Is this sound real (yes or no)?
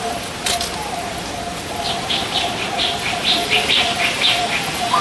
yes